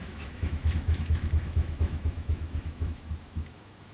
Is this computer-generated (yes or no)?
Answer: yes